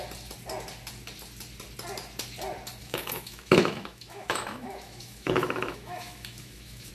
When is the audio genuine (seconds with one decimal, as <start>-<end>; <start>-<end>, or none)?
0.0-2.8